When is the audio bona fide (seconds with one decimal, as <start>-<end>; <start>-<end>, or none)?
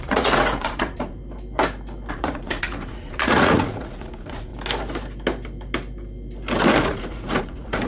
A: 1.2-2.1; 4.5-6.8